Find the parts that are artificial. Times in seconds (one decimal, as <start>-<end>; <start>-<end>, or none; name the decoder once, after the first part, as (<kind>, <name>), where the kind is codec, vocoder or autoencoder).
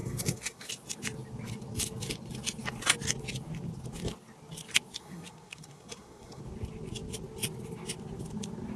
0.0-0.7 (codec, SNAC); 5.0-6.4